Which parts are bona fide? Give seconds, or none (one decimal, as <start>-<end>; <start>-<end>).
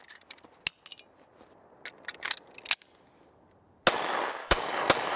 0.0-4.4